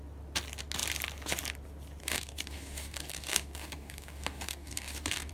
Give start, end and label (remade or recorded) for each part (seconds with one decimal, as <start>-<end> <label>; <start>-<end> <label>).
0.0-2.0 recorded; 2.0-5.3 remade